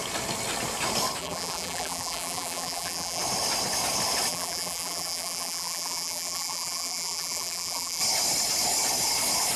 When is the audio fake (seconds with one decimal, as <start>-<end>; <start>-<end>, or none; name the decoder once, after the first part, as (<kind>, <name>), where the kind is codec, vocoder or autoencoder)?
1.2-3.2 (vocoder, BigVGAN v2); 4.3-8.0